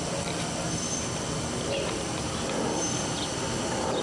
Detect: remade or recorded recorded